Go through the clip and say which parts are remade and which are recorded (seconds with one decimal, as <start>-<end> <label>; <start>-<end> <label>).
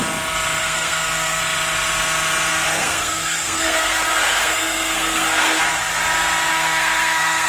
0.0-0.6 recorded; 0.6-1.4 remade; 1.4-2.5 recorded; 2.5-5.6 remade; 5.6-6.5 recorded; 6.5-7.5 remade